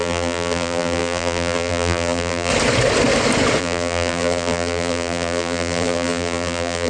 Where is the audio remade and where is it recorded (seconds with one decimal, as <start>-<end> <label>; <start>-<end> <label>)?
0.0-2.5 remade; 2.5-3.6 recorded; 3.6-6.9 remade